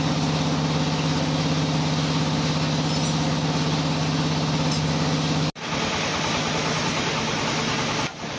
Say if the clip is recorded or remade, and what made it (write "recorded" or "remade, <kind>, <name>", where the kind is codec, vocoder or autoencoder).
recorded